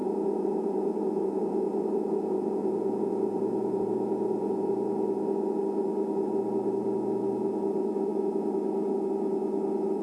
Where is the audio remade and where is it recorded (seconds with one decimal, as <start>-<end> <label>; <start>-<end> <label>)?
0.0-4.7 remade; 4.7-10.0 recorded